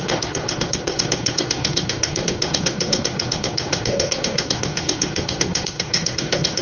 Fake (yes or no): yes